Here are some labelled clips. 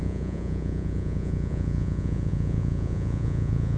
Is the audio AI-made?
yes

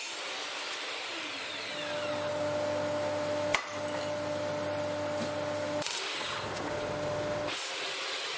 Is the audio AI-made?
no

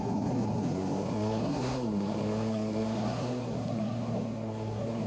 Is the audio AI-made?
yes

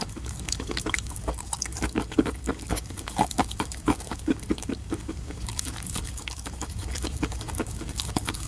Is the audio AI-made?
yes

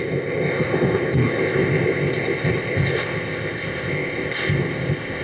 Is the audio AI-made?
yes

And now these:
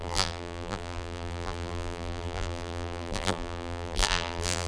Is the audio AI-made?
yes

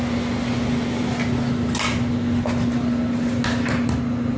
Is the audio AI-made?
no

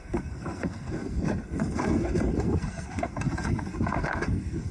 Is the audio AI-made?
yes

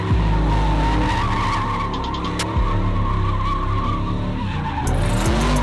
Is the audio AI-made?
no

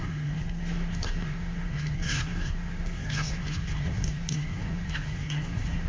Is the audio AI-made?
yes